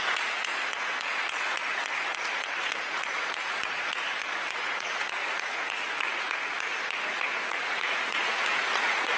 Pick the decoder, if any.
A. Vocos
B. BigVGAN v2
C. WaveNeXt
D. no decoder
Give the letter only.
A